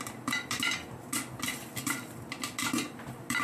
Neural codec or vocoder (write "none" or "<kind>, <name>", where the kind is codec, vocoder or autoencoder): none